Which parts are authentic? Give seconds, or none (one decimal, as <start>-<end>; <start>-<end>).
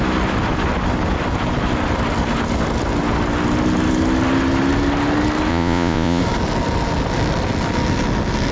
0.0-5.5; 6.2-8.5